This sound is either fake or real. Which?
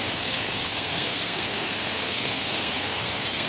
fake